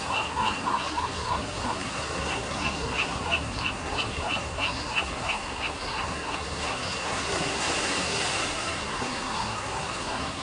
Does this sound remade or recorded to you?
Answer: remade